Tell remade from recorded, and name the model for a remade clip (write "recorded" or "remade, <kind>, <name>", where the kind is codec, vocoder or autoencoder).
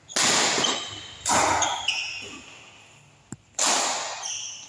recorded